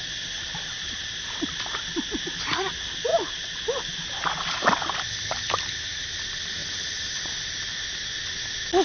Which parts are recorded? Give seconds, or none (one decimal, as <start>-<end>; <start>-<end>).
0.0-8.8